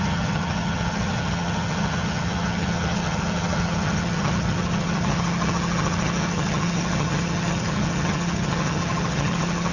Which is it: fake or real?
fake